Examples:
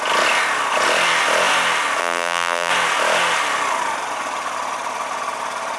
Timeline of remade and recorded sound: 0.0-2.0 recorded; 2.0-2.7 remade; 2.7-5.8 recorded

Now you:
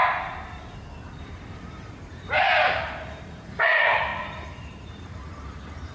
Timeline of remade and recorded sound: 0.0-1.2 recorded; 1.2-5.9 remade

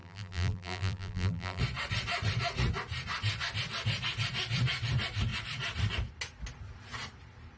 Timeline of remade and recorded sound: 0.0-1.6 remade; 1.6-7.6 recorded

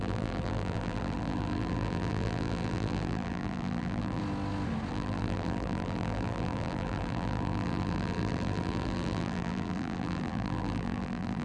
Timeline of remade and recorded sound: 0.0-4.2 remade; 4.2-4.9 recorded; 4.9-11.4 remade

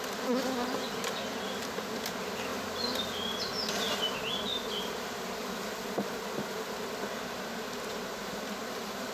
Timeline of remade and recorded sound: 0.0-4.5 recorded; 4.5-9.1 remade

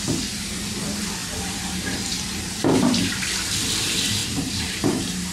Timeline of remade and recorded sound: 0.0-5.3 remade